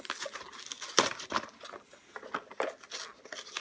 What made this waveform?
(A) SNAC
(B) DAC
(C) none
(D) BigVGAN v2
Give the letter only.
C